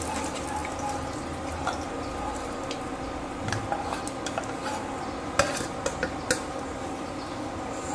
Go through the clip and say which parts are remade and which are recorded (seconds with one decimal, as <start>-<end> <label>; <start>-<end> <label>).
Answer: 0.0-7.9 recorded